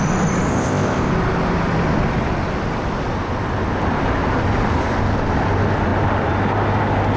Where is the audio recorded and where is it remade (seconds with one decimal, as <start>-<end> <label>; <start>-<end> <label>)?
0.0-0.5 recorded; 0.5-1.1 remade; 1.1-7.2 recorded